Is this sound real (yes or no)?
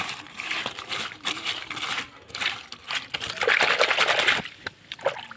yes